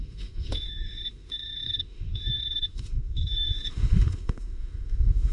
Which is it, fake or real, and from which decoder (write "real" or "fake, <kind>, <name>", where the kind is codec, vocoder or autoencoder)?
fake, autoencoder, DAC-VAE